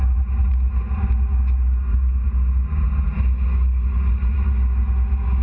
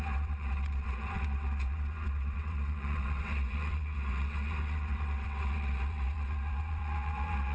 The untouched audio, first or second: first